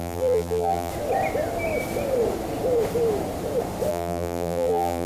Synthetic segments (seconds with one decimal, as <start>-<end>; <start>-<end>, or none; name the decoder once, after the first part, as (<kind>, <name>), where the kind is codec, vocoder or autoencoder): 0.0-0.9 (vocoder, BigVGAN v2); 3.9-5.1